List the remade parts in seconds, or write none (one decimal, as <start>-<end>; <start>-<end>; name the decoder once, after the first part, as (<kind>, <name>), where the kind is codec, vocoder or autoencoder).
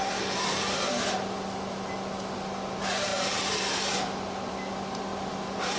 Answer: none